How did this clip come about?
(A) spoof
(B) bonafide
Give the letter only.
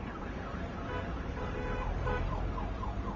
A